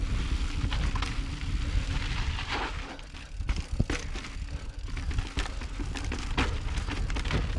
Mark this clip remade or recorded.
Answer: recorded